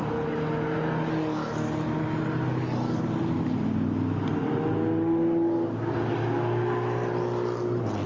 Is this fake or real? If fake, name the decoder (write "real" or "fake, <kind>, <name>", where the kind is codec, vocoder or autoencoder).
real